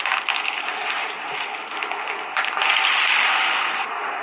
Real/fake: real